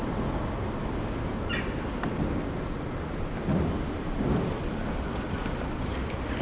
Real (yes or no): yes